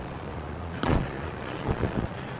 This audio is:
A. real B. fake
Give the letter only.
B